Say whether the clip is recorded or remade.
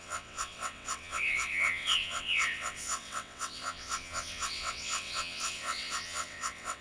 remade